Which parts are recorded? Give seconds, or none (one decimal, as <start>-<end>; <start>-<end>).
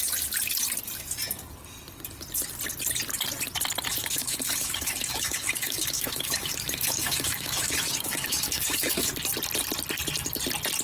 0.0-3.9; 9.1-10.8